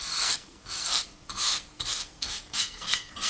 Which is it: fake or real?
fake